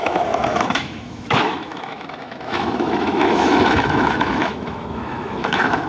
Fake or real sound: fake